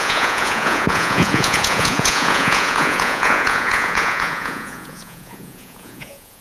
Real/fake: fake